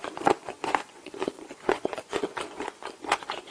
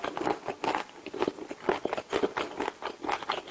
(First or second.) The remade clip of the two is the first